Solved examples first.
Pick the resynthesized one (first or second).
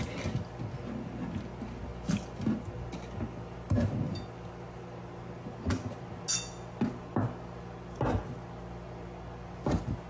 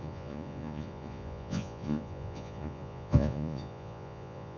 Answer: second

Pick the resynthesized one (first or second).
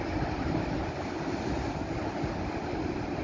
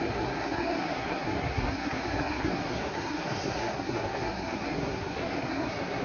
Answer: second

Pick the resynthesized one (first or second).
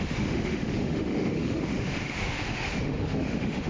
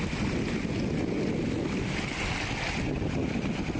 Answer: first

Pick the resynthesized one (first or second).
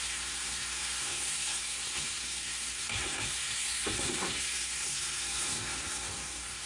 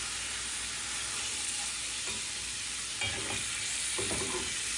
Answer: first